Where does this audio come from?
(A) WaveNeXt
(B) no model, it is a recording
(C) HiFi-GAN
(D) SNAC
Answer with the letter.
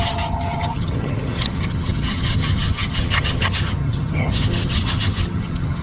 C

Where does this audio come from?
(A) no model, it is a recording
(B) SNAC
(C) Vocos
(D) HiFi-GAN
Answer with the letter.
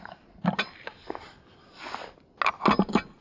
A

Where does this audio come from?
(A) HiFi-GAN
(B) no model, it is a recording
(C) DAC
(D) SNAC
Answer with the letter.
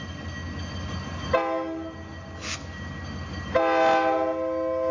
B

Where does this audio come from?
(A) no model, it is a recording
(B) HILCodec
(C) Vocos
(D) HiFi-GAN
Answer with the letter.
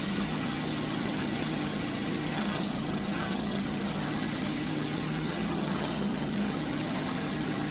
D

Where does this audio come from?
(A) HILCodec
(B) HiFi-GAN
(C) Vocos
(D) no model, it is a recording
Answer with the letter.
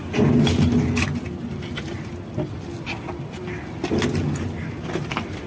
D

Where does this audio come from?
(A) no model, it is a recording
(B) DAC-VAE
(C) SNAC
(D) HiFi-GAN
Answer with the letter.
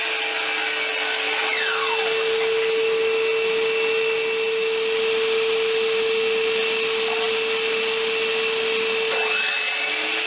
A